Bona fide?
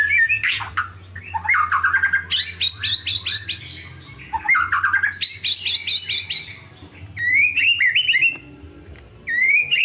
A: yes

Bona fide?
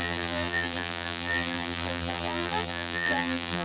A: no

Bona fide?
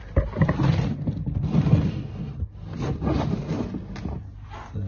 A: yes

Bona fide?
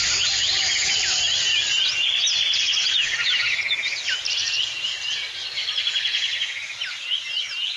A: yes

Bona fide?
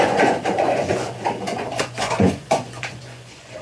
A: no